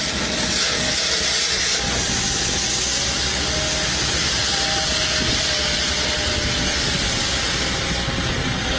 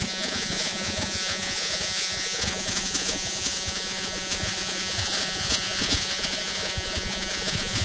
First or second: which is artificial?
second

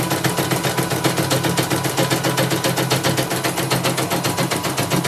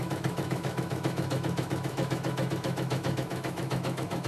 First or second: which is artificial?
second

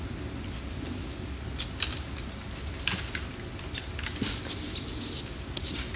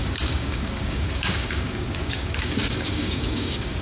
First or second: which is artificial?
second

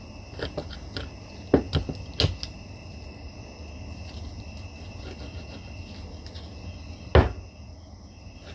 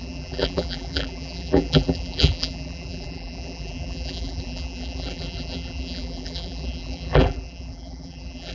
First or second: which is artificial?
second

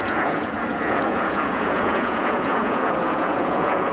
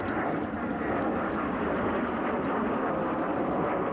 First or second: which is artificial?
first